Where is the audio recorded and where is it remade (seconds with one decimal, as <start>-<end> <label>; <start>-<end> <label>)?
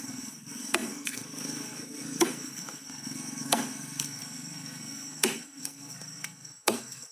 0.0-7.1 remade